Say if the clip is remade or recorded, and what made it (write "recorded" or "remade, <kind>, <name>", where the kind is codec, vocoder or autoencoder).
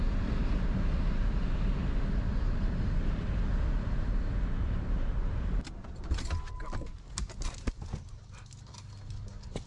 recorded